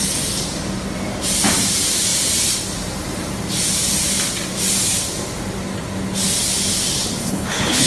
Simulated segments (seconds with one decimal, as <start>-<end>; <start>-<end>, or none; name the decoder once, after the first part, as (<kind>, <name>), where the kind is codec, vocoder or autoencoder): 7.2-7.9 (codec, HILCodec)